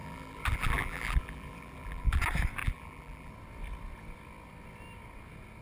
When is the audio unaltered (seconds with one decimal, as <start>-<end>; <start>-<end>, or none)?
2.2-2.6; 3.3-5.6